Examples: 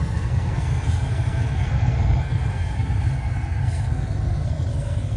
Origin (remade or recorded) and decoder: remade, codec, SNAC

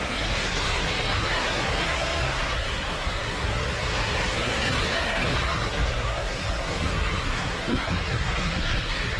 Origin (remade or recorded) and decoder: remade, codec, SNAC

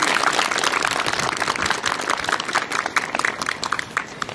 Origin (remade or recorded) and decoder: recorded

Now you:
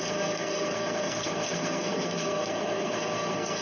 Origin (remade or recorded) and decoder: remade, codec, SNAC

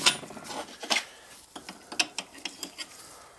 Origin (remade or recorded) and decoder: recorded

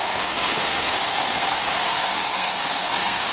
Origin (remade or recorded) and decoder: remade, codec, SNAC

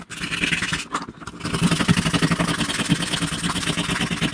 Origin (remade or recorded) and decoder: recorded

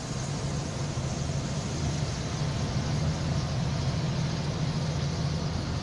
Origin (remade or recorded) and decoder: recorded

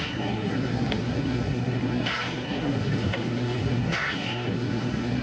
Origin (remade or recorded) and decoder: remade, codec, SNAC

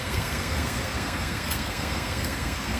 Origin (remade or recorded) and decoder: remade, codec, SNAC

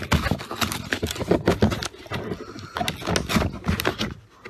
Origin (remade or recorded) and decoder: recorded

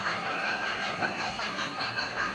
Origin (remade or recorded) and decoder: remade, codec, SNAC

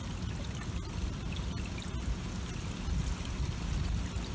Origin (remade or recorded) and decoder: recorded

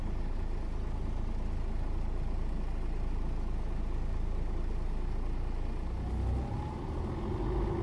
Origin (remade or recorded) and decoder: recorded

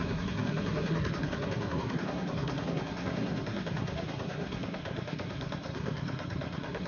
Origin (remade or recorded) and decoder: remade, codec, SNAC